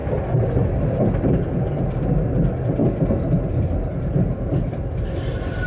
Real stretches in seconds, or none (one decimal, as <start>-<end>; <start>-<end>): 0.0-5.7